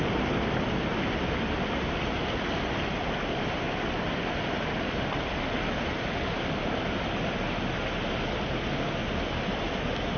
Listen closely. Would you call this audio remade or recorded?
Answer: recorded